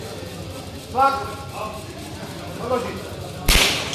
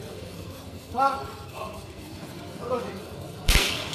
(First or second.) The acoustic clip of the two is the first